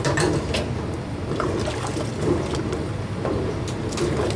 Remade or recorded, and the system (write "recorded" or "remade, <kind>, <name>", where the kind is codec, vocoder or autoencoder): recorded